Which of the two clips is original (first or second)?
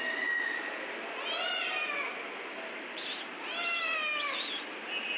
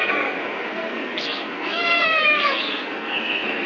first